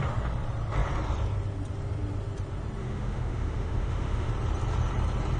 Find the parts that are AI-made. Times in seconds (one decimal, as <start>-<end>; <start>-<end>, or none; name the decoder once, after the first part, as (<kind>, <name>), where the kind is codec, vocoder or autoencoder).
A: 2.8-4.3 (autoencoder, DAC-VAE)